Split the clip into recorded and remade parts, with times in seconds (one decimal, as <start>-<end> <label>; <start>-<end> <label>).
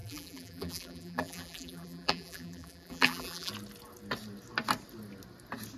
0.0-3.5 remade; 3.5-5.8 recorded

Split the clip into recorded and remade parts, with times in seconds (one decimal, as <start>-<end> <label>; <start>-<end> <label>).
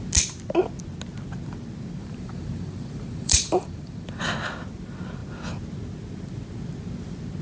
0.0-2.0 recorded; 2.0-4.4 remade; 4.4-7.4 recorded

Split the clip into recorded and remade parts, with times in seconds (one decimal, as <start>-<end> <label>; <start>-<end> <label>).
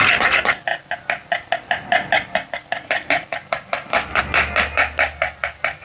0.0-0.7 recorded; 0.7-4.2 remade; 4.2-5.8 recorded